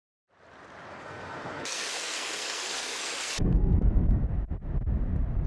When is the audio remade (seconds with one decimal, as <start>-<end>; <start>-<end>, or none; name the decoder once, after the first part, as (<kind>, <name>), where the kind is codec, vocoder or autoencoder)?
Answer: 0.9-4.2 (codec, SNAC)